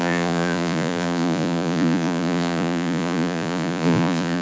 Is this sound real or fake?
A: fake